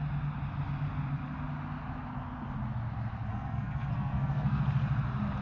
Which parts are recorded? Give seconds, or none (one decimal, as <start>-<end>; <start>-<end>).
0.0-3.3; 4.6-5.4